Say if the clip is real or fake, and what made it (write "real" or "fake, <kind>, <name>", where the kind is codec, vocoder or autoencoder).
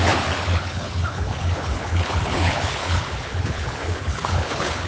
fake, codec, HILCodec